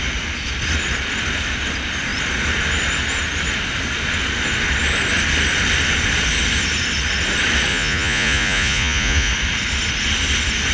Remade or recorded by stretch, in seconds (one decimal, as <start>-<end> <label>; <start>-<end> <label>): 0.0-7.7 recorded; 7.7-9.3 remade; 9.3-10.7 recorded